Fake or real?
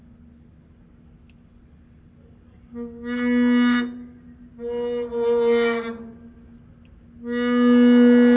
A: real